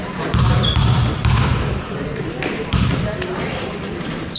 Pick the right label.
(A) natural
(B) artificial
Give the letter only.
B